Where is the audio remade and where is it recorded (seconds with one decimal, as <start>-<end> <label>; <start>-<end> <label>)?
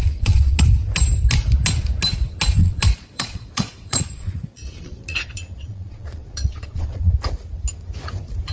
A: 0.0-0.6 remade; 0.6-2.6 recorded; 2.6-7.1 remade; 7.1-8.5 recorded